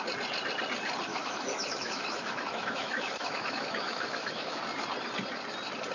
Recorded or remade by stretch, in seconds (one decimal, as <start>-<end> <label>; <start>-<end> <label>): 0.0-1.1 recorded; 1.1-4.6 remade; 4.6-5.9 recorded